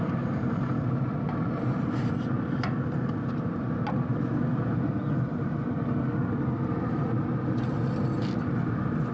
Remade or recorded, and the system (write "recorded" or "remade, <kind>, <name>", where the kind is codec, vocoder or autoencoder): recorded